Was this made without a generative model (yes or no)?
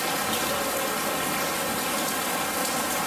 yes